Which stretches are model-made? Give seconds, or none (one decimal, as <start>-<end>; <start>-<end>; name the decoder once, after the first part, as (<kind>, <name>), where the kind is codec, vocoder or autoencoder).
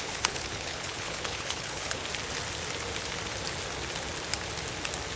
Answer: 0.0-2.0 (codec, HILCodec)